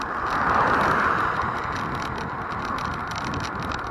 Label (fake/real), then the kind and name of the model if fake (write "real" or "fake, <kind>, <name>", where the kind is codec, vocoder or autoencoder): real